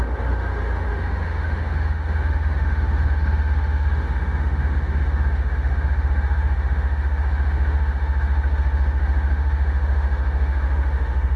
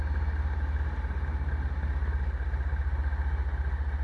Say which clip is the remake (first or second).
first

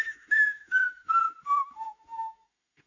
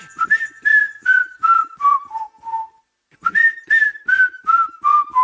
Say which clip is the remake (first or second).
first